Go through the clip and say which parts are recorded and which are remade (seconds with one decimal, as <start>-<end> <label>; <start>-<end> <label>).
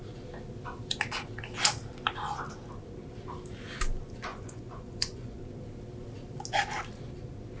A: 0.0-4.3 recorded; 4.3-5.4 remade; 5.4-7.6 recorded